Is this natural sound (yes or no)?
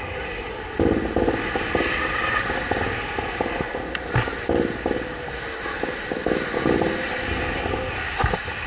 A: yes